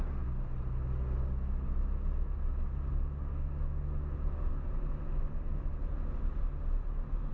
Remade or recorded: recorded